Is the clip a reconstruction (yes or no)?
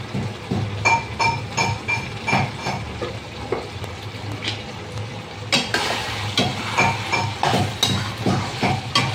no